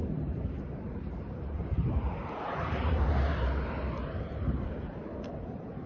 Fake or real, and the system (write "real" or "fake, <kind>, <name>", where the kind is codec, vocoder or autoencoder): fake, vocoder, BigVGAN v2